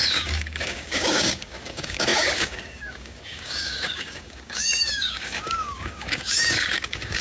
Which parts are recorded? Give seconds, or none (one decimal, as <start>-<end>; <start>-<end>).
none